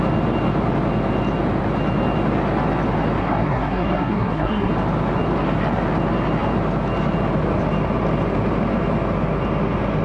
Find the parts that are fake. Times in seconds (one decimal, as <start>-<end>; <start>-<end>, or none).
3.2-4.7